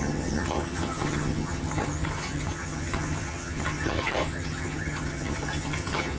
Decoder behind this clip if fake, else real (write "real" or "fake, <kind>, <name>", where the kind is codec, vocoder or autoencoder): fake, vocoder, HiFi-GAN